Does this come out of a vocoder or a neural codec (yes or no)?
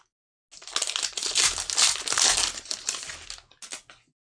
no